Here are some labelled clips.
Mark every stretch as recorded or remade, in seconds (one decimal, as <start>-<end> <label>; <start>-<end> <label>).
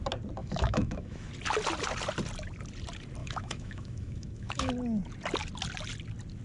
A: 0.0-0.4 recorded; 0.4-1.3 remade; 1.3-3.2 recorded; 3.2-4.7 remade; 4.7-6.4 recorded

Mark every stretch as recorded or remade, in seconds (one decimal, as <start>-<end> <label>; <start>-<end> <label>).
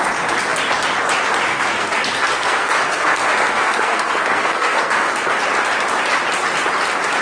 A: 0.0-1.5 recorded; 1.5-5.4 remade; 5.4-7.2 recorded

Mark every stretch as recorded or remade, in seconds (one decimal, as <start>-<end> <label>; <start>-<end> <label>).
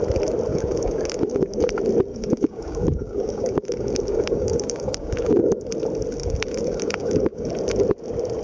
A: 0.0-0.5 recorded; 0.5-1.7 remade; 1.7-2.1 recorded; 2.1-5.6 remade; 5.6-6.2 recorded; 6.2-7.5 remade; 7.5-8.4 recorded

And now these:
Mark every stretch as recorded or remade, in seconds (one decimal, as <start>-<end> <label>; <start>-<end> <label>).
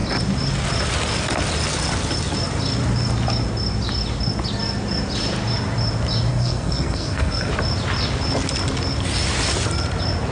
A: 0.0-6.3 recorded; 6.3-7.5 remade; 7.5-10.3 recorded